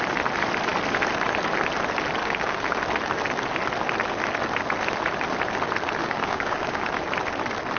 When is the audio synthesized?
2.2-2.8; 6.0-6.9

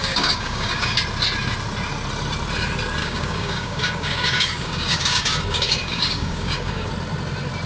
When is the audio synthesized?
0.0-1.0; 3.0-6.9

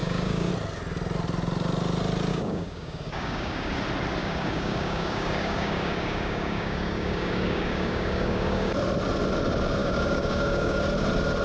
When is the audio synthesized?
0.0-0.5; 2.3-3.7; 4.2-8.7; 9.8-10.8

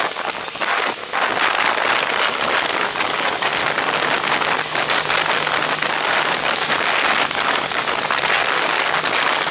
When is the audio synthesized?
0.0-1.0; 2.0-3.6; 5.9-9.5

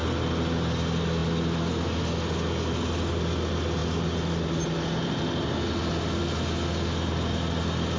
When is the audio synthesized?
none

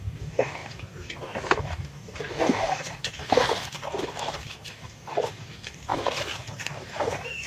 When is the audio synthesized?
0.0-7.5